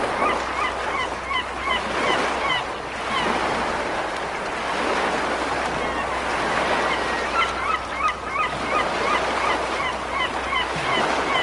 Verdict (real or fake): real